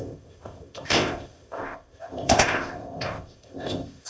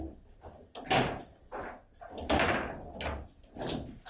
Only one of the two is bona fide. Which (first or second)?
second